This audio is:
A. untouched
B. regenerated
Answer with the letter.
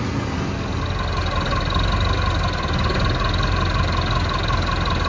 A